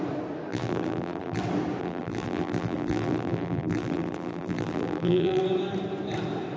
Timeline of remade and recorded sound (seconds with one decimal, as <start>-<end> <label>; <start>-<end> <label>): 0.0-0.5 recorded; 0.5-1.4 remade; 1.4-1.8 recorded; 1.8-5.4 remade; 5.4-6.6 recorded

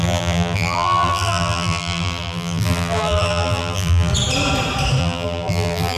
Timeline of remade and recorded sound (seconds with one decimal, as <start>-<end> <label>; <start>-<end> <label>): 0.0-4.1 remade; 4.1-5.0 recorded; 5.0-6.0 remade